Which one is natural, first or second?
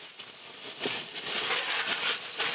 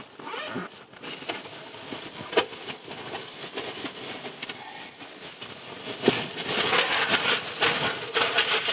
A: second